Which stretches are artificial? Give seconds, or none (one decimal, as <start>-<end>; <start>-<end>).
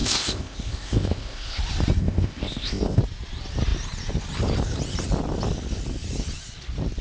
0.0-1.6; 2.0-3.0